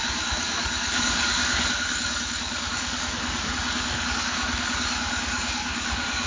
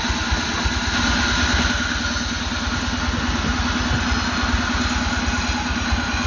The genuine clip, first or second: second